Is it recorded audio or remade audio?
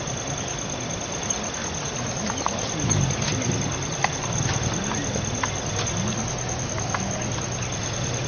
recorded